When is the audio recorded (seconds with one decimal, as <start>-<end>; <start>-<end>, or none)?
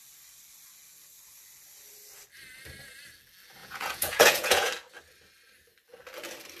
0.0-3.6; 4.7-6.6